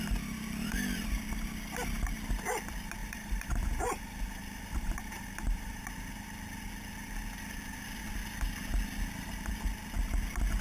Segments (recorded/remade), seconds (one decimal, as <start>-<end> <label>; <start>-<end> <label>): 0.0-3.0 recorded; 3.0-5.8 remade; 5.8-10.6 recorded